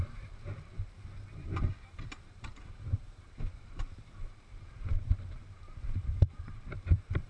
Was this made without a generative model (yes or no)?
no